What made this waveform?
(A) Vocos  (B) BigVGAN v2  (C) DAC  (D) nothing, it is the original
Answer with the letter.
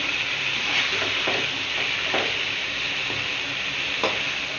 D